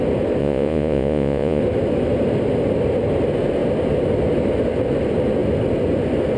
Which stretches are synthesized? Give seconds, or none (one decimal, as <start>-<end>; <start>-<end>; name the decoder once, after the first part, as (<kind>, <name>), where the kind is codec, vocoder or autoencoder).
0.4-1.6 (vocoder, Vocos)